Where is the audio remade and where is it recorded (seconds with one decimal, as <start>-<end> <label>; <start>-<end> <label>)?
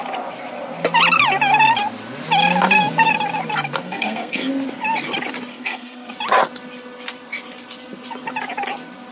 0.0-3.8 recorded; 3.8-4.5 remade; 4.5-5.5 recorded; 5.5-6.1 remade; 6.1-9.1 recorded